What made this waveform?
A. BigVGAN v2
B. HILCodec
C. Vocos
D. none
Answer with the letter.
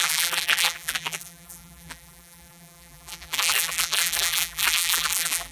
A